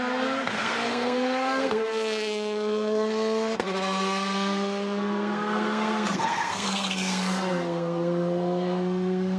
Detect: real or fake fake